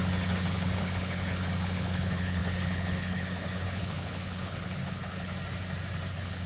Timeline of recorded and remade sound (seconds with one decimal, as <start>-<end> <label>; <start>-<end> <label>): 0.0-5.3 remade; 5.3-6.1 recorded; 6.1-6.5 remade

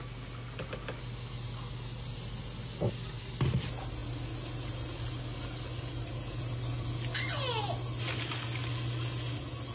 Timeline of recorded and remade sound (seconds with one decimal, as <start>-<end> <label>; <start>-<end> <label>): 0.0-9.7 recorded